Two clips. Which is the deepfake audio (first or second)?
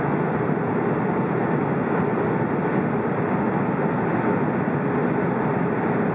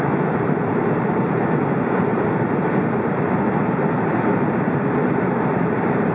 second